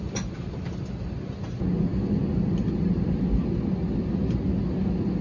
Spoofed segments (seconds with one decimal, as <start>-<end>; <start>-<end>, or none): none